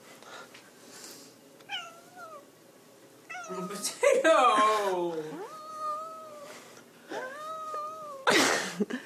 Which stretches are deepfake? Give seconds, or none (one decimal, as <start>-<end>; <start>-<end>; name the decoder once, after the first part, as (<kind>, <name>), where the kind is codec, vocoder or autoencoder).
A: none